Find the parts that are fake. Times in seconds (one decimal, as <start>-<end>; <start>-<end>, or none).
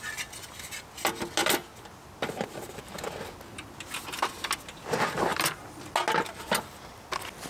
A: 5.3-5.8